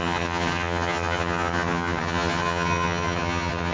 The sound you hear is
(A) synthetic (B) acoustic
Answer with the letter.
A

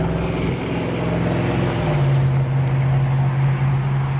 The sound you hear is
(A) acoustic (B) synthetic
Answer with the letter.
A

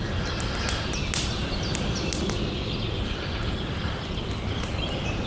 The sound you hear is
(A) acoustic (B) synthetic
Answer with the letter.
A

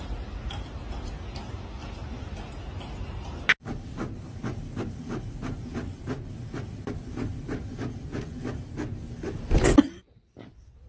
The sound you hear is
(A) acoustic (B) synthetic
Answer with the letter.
A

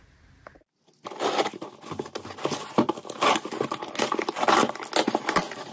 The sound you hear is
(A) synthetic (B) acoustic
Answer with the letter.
B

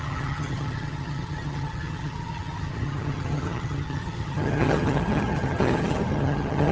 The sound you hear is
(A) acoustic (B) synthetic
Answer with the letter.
B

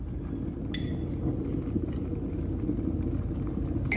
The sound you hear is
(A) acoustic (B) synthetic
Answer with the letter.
A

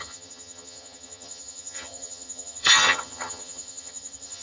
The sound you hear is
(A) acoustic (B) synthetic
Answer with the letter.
B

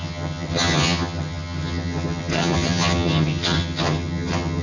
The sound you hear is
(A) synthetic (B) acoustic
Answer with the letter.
A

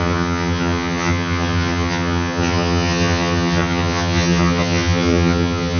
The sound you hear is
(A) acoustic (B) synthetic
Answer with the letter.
B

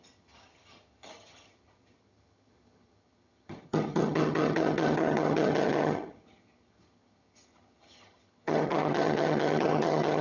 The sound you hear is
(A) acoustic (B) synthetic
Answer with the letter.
B